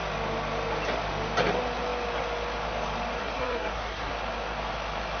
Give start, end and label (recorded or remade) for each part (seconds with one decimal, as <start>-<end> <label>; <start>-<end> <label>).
0.0-3.2 recorded; 3.2-4.1 remade; 4.1-5.2 recorded